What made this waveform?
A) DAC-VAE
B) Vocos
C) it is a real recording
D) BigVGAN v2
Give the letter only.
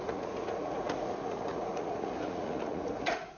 B